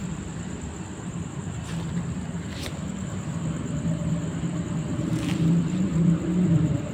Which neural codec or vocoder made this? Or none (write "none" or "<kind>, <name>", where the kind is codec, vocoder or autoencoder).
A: vocoder, BigVGAN v2